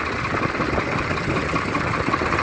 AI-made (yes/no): no